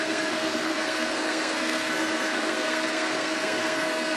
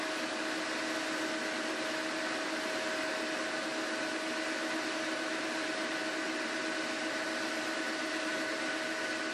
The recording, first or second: second